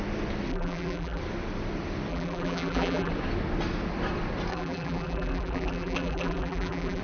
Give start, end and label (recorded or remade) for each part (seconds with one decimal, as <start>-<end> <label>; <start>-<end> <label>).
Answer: 0.0-0.5 recorded; 0.5-1.2 remade; 1.2-2.1 recorded; 2.1-3.1 remade; 3.1-4.5 recorded; 4.5-7.0 remade